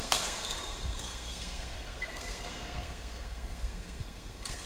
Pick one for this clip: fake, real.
fake